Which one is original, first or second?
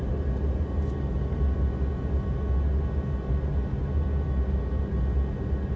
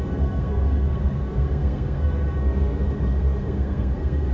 first